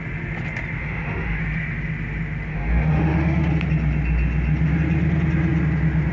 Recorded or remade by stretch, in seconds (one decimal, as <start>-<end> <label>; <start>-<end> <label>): 0.0-0.8 recorded; 0.8-1.4 remade; 1.4-2.5 recorded; 2.5-3.5 remade; 3.5-6.1 recorded